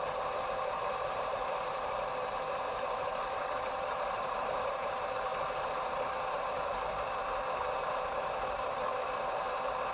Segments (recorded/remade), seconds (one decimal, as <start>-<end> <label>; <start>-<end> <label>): 0.0-9.9 remade